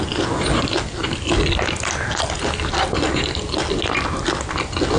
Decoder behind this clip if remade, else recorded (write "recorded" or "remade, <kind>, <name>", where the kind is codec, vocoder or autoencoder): recorded